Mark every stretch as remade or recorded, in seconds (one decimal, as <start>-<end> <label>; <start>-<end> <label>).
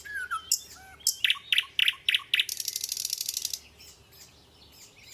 0.0-5.1 recorded